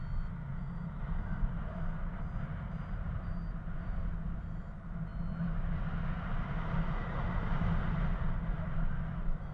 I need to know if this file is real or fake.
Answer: real